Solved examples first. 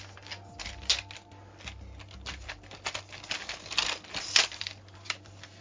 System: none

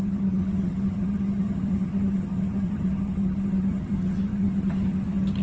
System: vocoder, HiFi-GAN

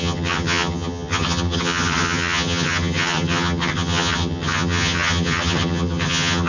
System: vocoder, HiFi-GAN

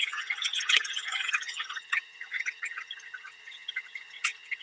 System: vocoder, HiFi-GAN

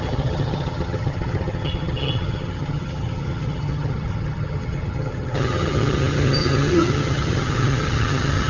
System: vocoder, HiFi-GAN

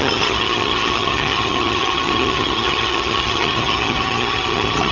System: vocoder, HiFi-GAN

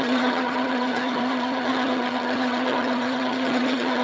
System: vocoder, HiFi-GAN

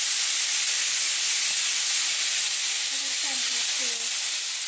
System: none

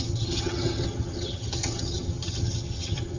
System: vocoder, HiFi-GAN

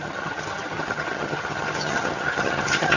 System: vocoder, HiFi-GAN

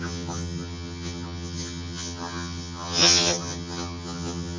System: vocoder, HiFi-GAN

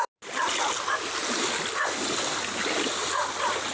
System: none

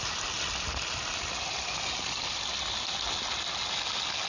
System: none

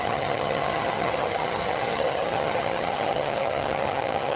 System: vocoder, HiFi-GAN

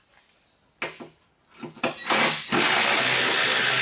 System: none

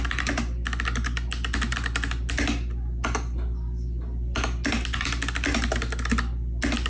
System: none